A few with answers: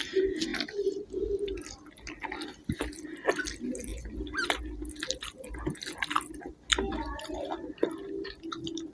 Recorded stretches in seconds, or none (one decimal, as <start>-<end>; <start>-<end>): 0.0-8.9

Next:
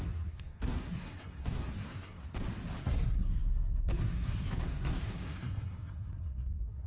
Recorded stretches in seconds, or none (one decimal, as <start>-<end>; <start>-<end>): 2.2-2.8

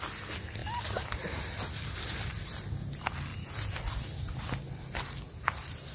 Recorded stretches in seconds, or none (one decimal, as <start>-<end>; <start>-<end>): 0.0-5.9

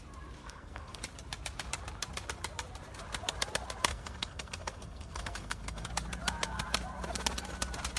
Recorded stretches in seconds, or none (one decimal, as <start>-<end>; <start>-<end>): 0.0-0.4; 1.0-3.9; 5.9-8.0

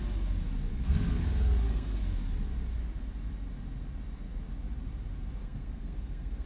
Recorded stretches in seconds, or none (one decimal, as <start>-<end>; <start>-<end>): 0.0-0.7; 2.0-5.4

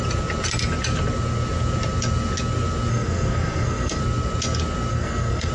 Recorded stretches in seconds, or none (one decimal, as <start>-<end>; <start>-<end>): 0.0-2.9; 4.0-4.9